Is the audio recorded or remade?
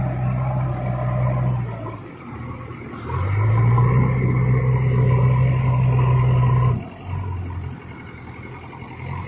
recorded